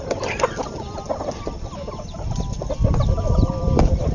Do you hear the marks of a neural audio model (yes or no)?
no